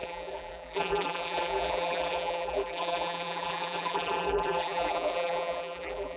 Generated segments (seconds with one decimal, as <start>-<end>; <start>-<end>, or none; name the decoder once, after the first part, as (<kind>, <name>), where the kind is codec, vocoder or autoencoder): 0.0-6.2 (vocoder, BigVGAN v2)

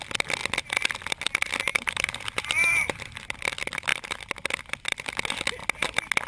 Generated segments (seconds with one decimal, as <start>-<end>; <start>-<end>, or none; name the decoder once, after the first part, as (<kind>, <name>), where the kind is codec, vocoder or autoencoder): 1.7-3.0 (vocoder, BigVGAN v2)

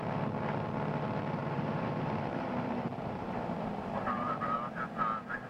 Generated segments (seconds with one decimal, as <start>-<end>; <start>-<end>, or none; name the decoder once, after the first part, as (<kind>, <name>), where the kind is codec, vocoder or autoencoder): 1.4-4.7 (vocoder, BigVGAN v2)